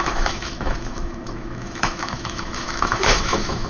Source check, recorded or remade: remade